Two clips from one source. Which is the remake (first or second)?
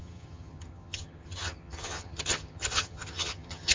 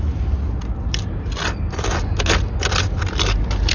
first